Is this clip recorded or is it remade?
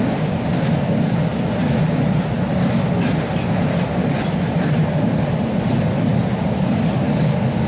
recorded